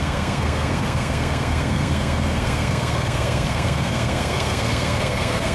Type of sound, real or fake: fake